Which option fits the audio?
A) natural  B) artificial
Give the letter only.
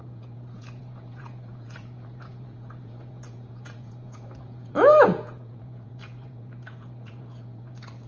B